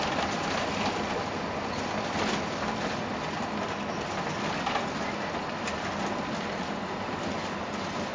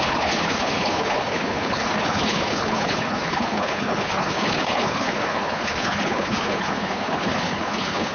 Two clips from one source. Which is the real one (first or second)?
first